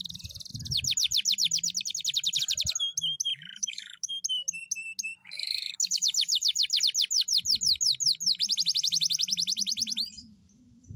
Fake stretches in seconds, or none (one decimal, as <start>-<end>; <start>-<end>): 3.3-4.1; 5.2-6.8